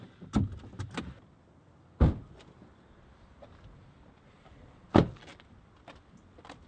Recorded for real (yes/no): yes